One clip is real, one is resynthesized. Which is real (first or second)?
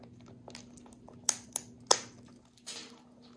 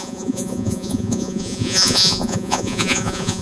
first